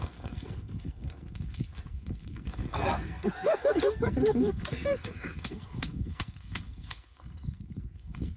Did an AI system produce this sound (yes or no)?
yes